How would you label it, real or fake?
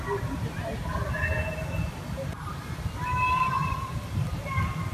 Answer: real